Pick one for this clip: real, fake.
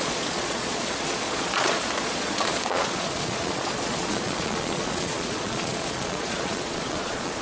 fake